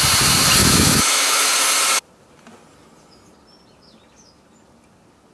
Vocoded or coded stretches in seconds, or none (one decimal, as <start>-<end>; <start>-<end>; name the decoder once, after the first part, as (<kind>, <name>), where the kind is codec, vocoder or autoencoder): 0.6-1.5 (autoencoder, DAC-VAE)